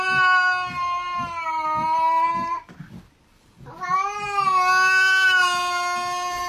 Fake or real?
real